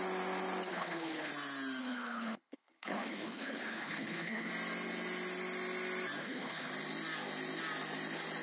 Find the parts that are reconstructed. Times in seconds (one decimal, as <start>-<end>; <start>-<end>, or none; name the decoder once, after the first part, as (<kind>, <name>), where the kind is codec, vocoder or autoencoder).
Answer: 0.7-1.3 (codec, HILCodec); 1.8-4.5; 6.2-6.7